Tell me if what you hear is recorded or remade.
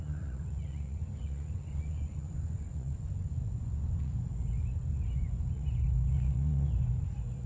remade